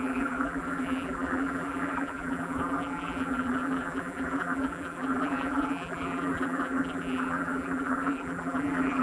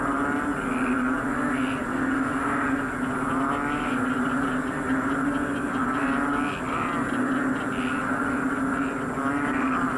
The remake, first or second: first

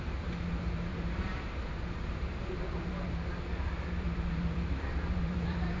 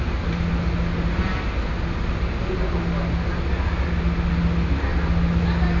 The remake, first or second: first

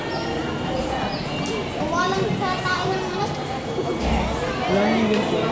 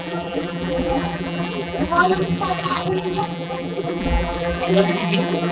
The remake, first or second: second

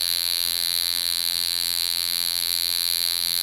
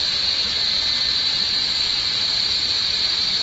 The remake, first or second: first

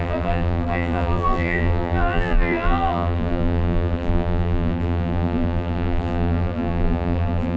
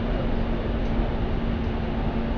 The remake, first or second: first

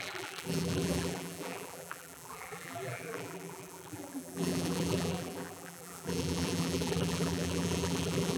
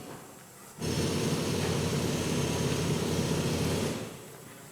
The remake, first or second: first